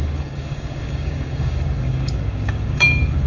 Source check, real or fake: fake